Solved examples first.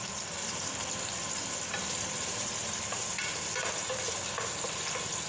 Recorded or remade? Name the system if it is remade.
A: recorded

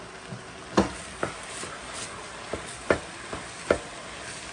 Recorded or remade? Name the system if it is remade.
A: recorded